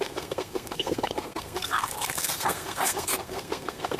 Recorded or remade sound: remade